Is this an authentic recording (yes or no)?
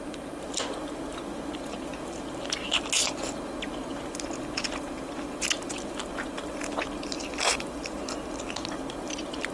yes